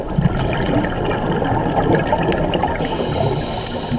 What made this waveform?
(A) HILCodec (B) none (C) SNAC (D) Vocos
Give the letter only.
B